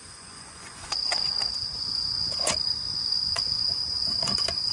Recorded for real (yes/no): no